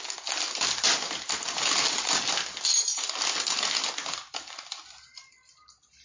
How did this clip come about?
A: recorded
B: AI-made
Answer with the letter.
A